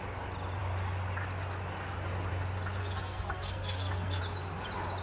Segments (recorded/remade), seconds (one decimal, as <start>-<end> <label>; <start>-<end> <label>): 0.0-2.8 recorded; 2.8-4.2 remade; 4.2-5.0 recorded